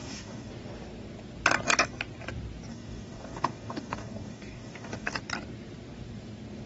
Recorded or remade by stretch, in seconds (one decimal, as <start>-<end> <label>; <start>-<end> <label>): 0.0-0.5 remade; 0.5-2.7 recorded; 2.7-5.2 remade; 5.2-6.7 recorded